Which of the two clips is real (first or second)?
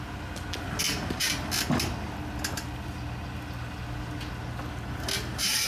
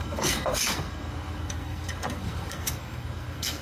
first